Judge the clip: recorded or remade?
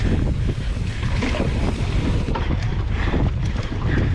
recorded